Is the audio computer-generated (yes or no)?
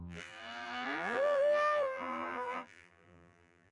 yes